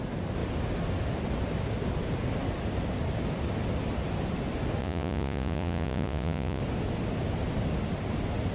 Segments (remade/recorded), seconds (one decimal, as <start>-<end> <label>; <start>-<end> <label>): 0.0-4.8 recorded; 4.8-6.6 remade; 6.6-8.5 recorded